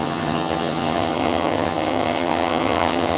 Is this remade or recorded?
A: remade